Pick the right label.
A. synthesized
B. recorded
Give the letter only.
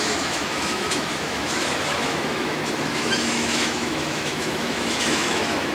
A